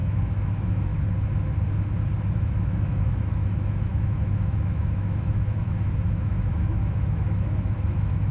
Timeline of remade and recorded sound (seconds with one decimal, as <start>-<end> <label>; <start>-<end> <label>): 0.0-0.9 remade; 0.9-2.3 recorded; 2.3-8.3 remade